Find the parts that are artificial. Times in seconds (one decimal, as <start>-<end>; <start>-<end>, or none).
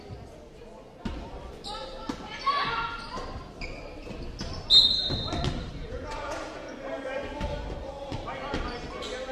5.8-6.7